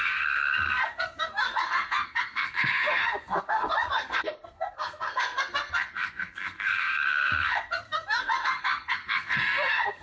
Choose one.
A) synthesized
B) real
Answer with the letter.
A